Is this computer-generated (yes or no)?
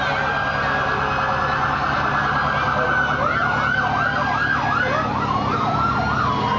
no